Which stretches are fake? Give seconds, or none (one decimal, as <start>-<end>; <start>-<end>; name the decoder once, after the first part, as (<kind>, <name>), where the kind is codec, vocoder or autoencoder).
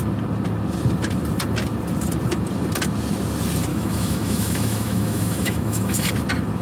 3.7-6.1 (autoencoder, DAC-VAE)